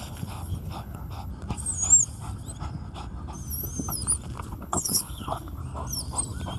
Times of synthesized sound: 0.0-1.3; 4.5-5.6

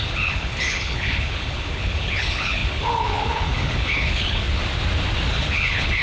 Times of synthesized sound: 0.0-4.6; 5.3-6.0

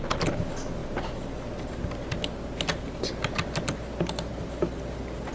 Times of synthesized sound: none

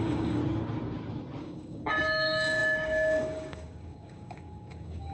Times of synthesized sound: 0.0-0.4; 1.4-5.1

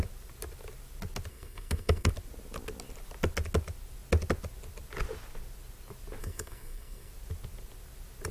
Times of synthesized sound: 1.3-2.1; 6.2-7.1

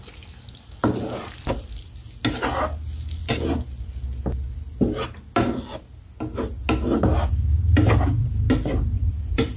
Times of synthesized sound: none

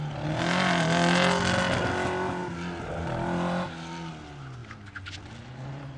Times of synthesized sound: none

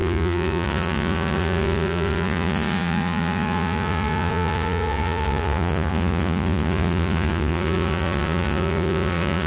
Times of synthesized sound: 0.0-9.5